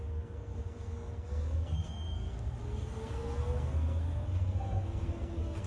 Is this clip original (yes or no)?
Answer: no